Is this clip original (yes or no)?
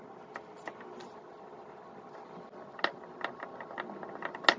yes